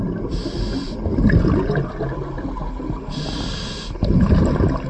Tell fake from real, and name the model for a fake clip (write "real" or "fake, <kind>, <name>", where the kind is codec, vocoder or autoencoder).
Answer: real